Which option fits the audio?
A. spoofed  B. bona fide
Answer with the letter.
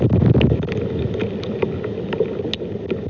B